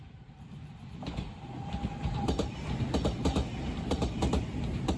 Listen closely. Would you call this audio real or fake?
fake